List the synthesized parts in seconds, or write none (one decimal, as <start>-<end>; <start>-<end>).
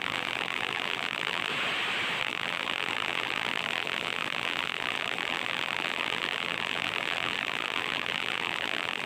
0.0-1.5; 2.2-9.1